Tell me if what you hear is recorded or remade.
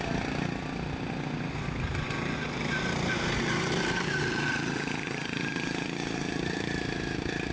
recorded